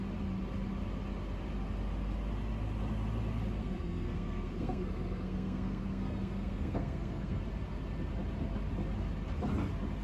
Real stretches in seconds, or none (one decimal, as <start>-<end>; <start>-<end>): 0.0-3.6; 7.4-10.0